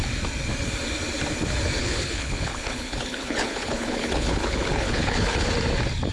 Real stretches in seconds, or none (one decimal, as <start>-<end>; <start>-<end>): 0.0-1.8; 5.5-6.1